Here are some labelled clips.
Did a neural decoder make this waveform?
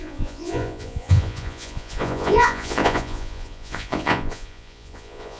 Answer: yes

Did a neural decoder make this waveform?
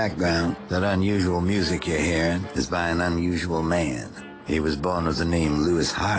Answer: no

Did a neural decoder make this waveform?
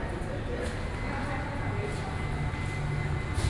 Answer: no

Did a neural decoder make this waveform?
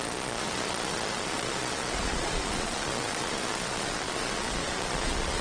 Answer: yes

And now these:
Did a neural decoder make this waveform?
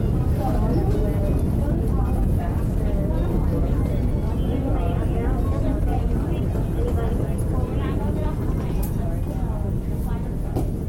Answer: no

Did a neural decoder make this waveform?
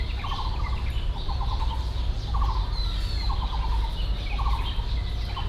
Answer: no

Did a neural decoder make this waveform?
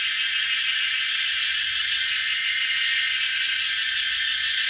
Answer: yes